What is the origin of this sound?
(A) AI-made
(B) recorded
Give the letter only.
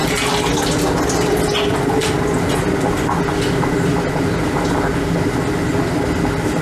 B